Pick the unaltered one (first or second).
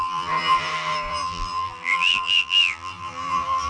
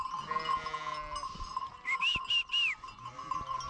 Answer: second